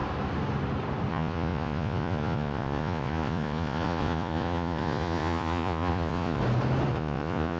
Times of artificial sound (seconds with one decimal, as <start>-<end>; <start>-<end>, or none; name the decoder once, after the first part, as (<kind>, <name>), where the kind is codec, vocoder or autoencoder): 1.1-6.4 (vocoder, Vocos); 6.9-7.6